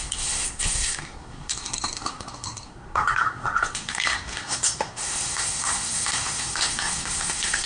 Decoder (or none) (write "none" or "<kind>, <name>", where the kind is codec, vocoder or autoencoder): codec, SNAC